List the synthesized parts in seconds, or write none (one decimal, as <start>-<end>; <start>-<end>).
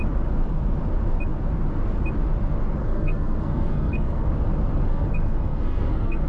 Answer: 2.8-4.3; 4.9-6.3